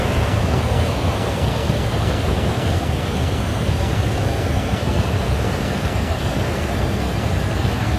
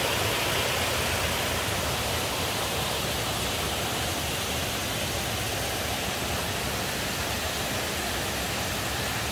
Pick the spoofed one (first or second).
first